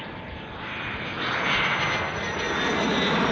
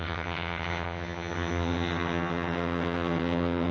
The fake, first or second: second